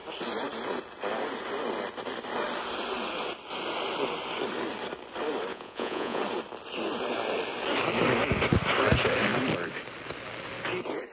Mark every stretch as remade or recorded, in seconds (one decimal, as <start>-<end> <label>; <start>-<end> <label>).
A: 0.0-5.5 recorded; 5.5-6.2 remade; 6.2-11.1 recorded